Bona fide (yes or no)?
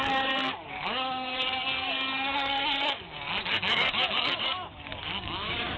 no